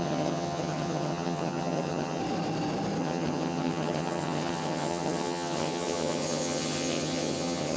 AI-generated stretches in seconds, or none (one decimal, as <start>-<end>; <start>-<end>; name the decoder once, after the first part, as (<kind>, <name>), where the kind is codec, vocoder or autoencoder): 0.0-2.2 (vocoder, HiFi-GAN); 3.0-7.8